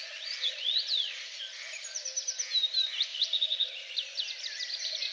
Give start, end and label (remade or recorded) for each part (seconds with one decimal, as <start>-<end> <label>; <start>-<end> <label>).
0.0-1.4 remade; 1.4-3.1 recorded; 3.1-3.9 remade; 3.9-5.1 recorded